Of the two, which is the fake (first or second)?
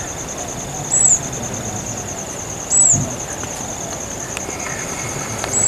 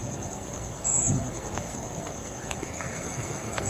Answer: second